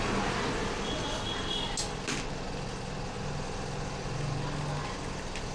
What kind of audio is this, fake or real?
real